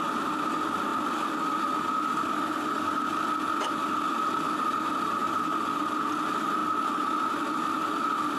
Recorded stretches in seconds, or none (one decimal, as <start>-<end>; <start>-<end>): 0.0-8.4